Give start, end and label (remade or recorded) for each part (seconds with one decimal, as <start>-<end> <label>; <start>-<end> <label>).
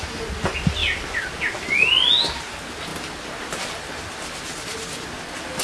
0.0-5.6 recorded